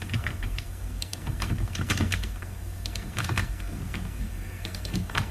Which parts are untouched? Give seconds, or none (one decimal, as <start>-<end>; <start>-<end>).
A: none